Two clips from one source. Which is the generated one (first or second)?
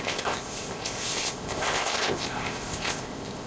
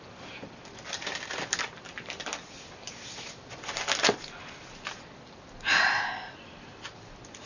first